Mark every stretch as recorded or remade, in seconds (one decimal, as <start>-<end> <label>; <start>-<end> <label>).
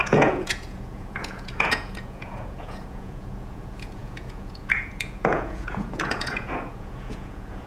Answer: 0.0-7.7 remade